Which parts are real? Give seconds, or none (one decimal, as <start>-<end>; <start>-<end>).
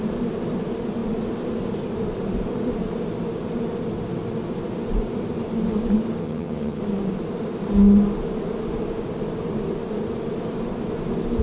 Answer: 0.0-6.2; 6.8-11.4